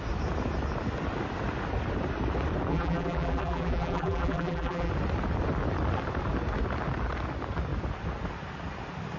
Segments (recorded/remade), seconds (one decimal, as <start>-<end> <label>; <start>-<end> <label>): 0.0-2.7 recorded; 2.7-4.9 remade; 4.9-9.2 recorded